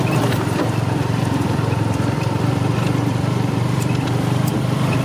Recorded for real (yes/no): no